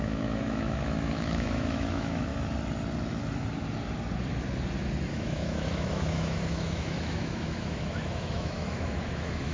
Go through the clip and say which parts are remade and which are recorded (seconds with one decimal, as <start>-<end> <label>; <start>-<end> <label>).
0.0-2.3 remade; 2.3-5.1 recorded; 5.1-9.5 remade